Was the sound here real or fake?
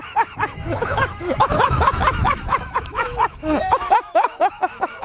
fake